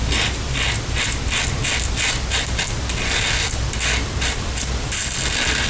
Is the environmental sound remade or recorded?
recorded